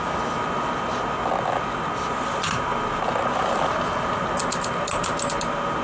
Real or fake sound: real